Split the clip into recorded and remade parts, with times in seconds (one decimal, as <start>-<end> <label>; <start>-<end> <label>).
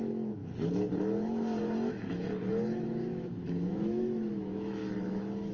0.0-0.4 remade; 0.4-1.9 recorded; 1.9-5.5 remade